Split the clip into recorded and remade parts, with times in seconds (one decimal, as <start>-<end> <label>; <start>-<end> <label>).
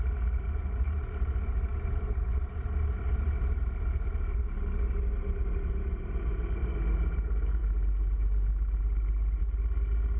0.0-10.2 recorded